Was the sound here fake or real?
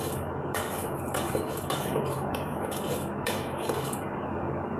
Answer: fake